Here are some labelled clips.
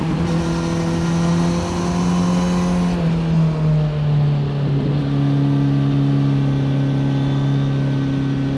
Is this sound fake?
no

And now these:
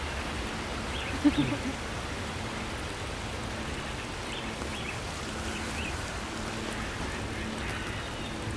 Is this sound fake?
no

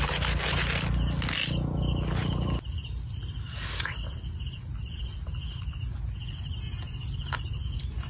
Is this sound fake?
no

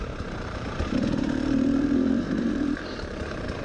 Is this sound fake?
yes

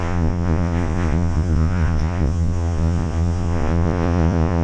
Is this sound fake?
yes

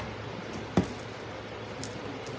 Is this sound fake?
no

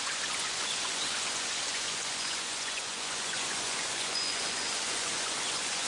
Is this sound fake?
yes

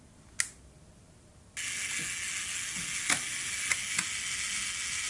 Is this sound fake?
no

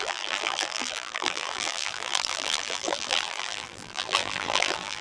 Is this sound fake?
yes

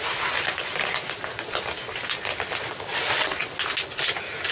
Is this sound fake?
no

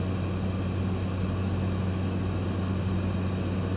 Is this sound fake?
no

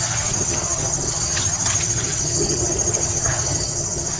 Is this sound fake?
yes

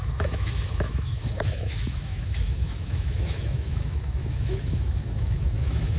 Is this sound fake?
yes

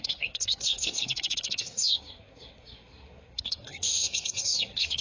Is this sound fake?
yes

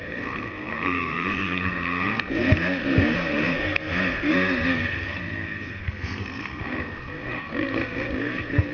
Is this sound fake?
yes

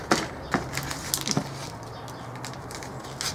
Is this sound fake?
no